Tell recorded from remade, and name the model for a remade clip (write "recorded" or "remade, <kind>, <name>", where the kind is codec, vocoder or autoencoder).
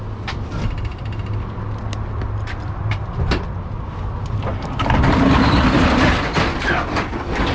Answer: recorded